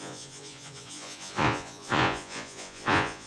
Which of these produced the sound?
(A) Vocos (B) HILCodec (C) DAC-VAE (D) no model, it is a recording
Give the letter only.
A